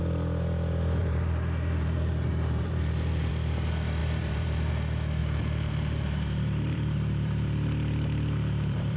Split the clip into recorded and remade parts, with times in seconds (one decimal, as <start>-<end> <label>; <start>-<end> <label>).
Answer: 0.0-1.0 recorded; 1.0-3.3 remade; 3.3-4.0 recorded; 4.0-4.7 remade; 4.7-5.2 recorded; 5.2-9.0 remade